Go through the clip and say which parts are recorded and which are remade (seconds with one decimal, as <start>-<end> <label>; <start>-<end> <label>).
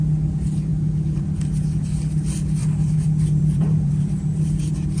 0.0-2.6 recorded; 2.6-4.6 remade; 4.6-5.0 recorded